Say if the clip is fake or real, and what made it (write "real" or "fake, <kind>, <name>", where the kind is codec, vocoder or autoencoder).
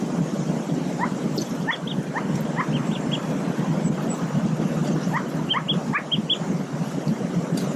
real